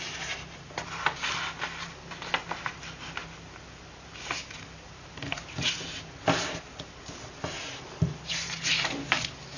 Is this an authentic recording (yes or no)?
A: yes